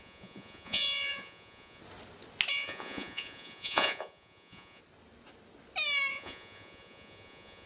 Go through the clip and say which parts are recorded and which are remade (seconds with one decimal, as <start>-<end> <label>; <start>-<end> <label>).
0.0-1.8 remade; 1.8-2.5 recorded; 2.5-4.8 remade; 4.8-6.1 recorded; 6.1-7.7 remade